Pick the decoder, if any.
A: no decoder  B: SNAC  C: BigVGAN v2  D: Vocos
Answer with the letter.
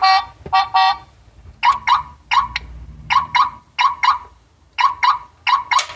A